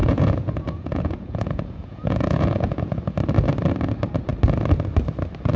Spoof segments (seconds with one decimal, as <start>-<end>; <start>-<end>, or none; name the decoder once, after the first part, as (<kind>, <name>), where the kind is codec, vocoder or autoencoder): 0.0-3.0 (vocoder, Vocos)